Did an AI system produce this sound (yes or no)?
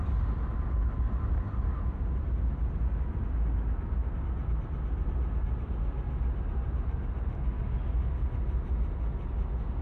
no